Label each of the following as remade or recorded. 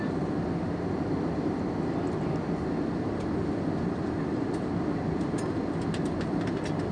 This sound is recorded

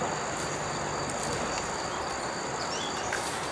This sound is recorded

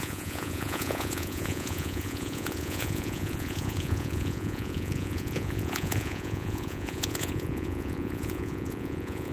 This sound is remade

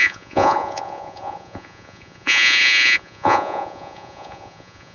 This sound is remade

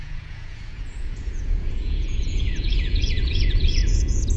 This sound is remade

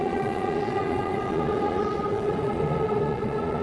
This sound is remade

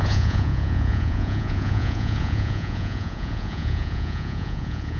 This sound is remade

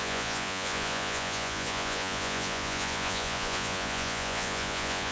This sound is remade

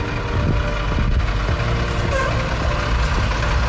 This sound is recorded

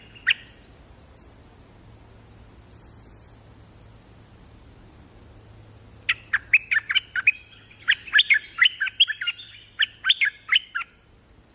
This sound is recorded